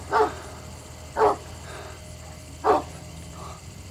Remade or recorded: recorded